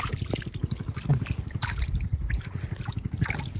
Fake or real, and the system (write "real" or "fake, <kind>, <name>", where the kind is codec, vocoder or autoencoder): real